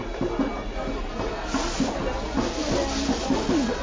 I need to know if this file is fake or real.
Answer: real